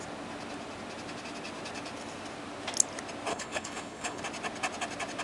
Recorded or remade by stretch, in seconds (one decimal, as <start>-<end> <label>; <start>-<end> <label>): 0.0-3.3 recorded; 3.3-4.2 remade; 4.2-5.2 recorded